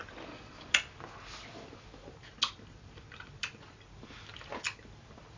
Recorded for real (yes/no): yes